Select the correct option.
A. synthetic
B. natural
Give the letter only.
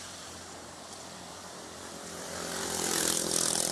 A